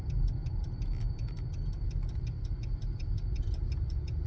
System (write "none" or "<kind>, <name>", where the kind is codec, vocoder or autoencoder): none